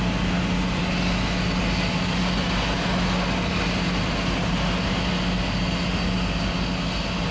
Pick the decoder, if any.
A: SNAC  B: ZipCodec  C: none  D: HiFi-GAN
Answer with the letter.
C